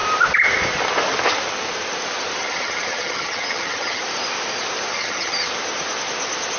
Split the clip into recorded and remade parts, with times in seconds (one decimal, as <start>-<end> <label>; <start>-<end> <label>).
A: 0.0-2.4 recorded; 2.4-4.0 remade; 4.0-4.9 recorded; 4.9-5.5 remade; 5.5-6.6 recorded